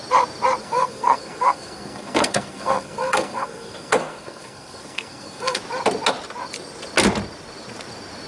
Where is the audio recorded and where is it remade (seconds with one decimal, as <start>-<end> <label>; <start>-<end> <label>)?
0.0-0.6 recorded; 0.6-5.6 remade; 5.6-8.3 recorded